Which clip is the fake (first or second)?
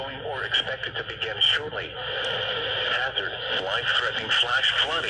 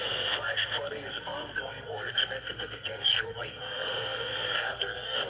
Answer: second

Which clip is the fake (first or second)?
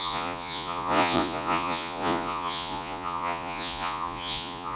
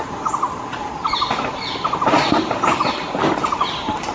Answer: first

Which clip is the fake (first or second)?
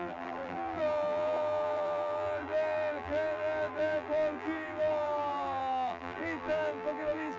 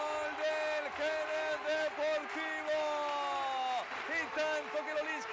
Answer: first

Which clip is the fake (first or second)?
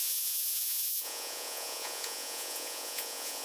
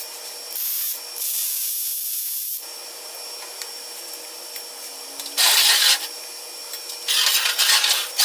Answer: first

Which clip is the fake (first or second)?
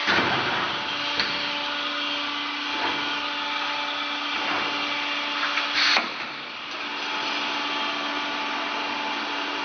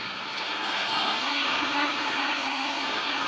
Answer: second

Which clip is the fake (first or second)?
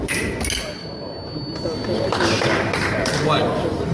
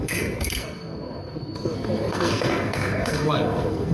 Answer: second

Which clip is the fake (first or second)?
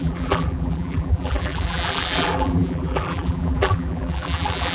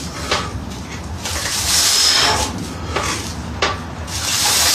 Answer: first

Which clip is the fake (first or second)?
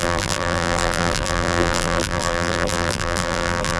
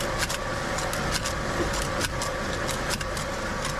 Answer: first